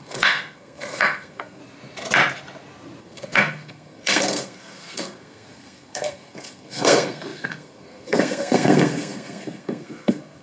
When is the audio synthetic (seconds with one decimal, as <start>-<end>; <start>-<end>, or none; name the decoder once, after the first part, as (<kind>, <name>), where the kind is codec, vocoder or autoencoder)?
0.0-1.6 (codec, SNAC); 3.0-10.4